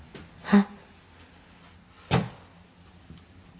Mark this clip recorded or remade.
recorded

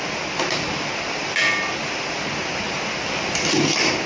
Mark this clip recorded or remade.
recorded